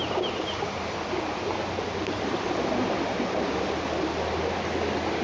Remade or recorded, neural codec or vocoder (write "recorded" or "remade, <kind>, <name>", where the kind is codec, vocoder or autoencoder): recorded